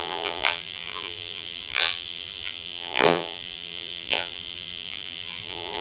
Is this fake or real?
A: fake